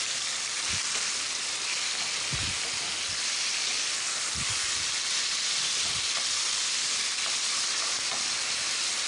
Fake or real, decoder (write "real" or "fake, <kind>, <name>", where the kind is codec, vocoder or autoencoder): real